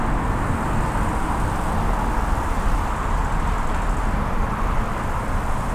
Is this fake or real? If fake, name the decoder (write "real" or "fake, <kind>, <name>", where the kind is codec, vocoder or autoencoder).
real